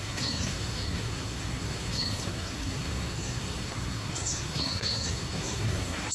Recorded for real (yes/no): no